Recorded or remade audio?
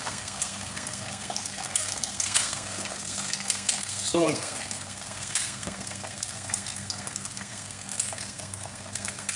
remade